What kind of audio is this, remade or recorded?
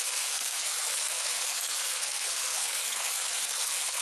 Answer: remade